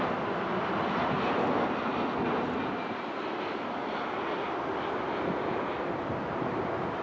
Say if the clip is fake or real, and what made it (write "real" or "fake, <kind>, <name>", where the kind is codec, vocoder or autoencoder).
real